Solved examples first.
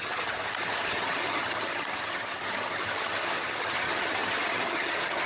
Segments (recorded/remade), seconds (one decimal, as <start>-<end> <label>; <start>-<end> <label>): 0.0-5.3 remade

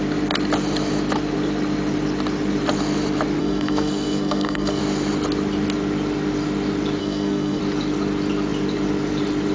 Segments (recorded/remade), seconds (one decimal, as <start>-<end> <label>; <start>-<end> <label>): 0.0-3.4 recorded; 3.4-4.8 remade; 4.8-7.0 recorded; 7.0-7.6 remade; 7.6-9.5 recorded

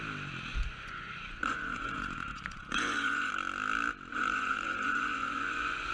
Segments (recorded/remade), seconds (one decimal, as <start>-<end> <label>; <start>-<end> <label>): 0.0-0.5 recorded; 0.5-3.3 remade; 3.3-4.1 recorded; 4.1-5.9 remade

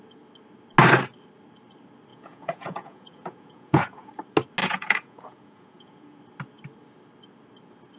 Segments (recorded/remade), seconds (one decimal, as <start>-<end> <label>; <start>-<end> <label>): 0.0-2.1 recorded; 2.1-4.1 remade; 4.1-4.6 recorded; 4.6-6.2 remade; 6.2-8.0 recorded

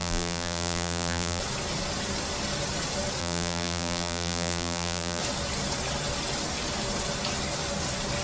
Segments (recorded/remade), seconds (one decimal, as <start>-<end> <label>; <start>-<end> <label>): 0.0-1.4 remade; 1.4-3.2 recorded; 3.2-5.2 remade; 5.2-8.2 recorded

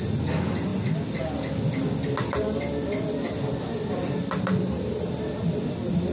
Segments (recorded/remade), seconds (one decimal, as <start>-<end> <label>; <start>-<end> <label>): 0.0-6.1 recorded

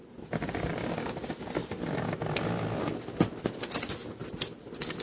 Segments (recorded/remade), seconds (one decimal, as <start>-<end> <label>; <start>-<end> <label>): 0.0-5.0 recorded